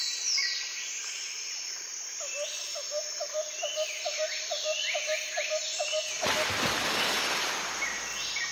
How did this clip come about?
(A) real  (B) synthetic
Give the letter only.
A